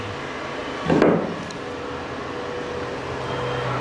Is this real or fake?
real